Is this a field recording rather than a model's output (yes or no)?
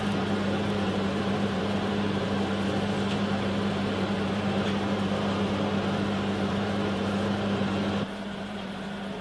no